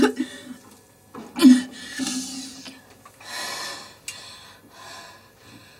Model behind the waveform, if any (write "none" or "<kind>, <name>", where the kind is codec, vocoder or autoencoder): none